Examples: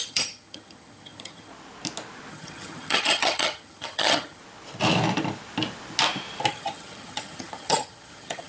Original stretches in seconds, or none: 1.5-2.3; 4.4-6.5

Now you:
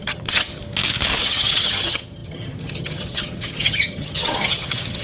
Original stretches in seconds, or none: 0.6-1.2

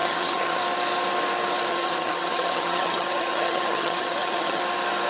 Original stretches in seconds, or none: 0.6-1.7; 4.6-5.1

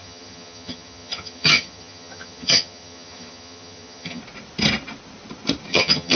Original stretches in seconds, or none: 4.2-5.7

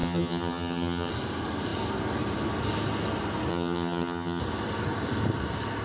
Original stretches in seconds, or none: 1.1-3.5; 4.4-5.8

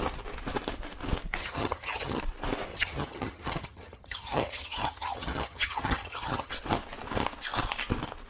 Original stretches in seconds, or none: 0.0-1.4; 2.2-2.7; 6.5-8.3

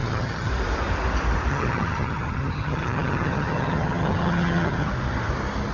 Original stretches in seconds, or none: 0.5-1.5; 4.9-5.7

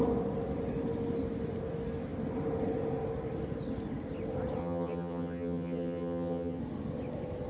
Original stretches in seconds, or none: 0.0-4.6; 6.6-7.5